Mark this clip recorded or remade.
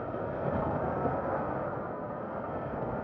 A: remade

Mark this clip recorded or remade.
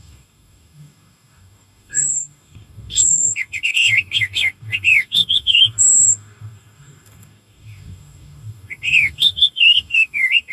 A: remade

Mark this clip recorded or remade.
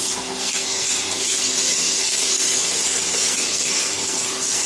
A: remade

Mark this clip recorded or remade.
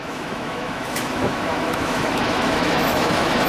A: remade